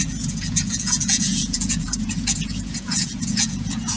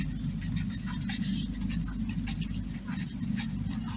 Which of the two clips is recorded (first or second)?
second